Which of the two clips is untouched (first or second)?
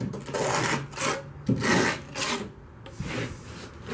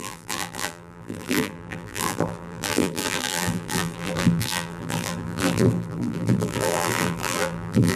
first